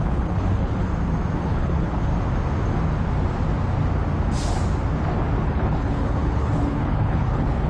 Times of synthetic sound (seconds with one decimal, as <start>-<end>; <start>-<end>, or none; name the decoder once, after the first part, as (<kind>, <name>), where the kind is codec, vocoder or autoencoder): 0.0-0.9 (codec, HILCodec); 1.4-2.1; 5.4-7.7